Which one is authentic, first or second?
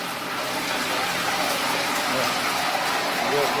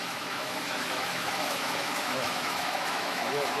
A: first